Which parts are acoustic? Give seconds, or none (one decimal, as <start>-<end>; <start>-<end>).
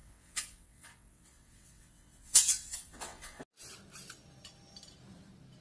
3.4-5.6